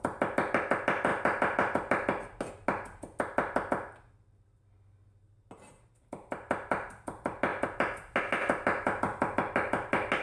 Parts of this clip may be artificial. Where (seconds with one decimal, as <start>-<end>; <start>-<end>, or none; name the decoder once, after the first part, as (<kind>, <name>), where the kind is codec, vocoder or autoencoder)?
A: none